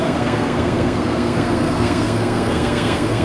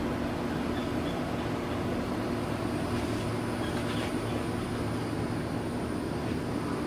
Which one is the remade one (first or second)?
first